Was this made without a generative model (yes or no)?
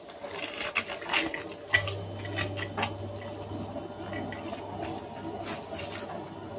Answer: yes